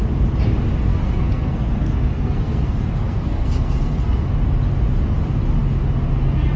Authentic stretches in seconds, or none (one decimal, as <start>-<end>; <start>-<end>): 0.0-0.9; 4.2-6.6